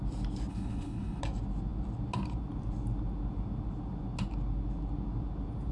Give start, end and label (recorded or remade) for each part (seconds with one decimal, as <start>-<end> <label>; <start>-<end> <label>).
0.0-0.5 recorded; 0.5-1.2 remade; 1.2-5.7 recorded